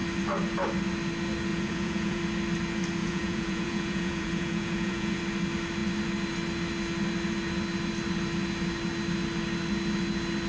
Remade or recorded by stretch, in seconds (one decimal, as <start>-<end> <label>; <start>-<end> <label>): 0.0-1.5 recorded; 1.5-2.2 remade; 2.2-3.0 recorded; 3.0-5.2 remade; 5.2-10.5 recorded